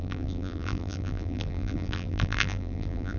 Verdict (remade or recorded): remade